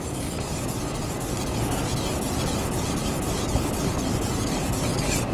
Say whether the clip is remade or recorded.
recorded